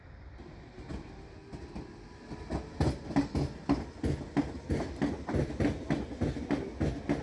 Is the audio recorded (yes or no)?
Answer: yes